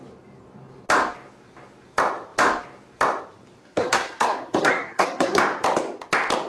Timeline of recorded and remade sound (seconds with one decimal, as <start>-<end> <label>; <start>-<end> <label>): 0.0-3.6 recorded; 3.6-5.4 remade; 5.4-6.5 recorded